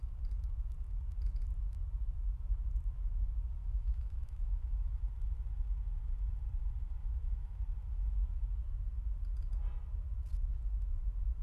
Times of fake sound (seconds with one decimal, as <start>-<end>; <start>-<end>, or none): 3.6-5.1; 7.0-7.6